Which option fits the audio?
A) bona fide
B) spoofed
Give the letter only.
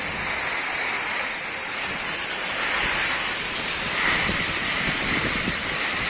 A